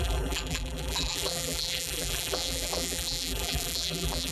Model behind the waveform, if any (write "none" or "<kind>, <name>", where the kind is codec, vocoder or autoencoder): vocoder, BigVGAN v2